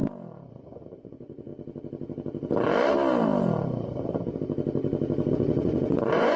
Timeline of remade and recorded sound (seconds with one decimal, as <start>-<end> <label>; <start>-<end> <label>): 0.0-0.5 recorded; 0.5-1.5 remade; 1.5-5.3 recorded; 5.3-6.4 remade